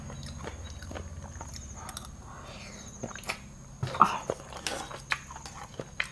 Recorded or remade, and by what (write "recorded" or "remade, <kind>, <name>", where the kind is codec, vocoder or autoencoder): recorded